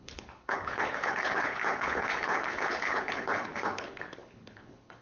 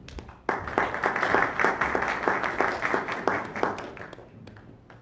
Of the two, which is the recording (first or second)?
second